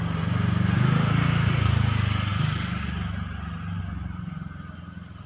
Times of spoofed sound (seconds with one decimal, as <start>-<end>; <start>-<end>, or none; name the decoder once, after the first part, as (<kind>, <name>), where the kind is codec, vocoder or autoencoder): none